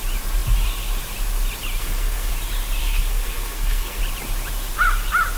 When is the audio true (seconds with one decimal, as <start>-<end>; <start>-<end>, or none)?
0.0-1.8; 2.3-2.8; 4.0-5.4